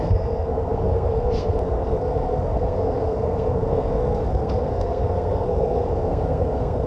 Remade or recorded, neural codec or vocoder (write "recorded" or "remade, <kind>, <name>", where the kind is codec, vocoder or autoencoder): remade, codec, SNAC